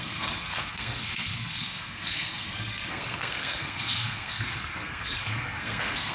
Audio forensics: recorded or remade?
remade